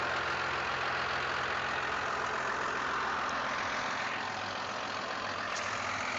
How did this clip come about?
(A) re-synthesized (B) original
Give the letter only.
B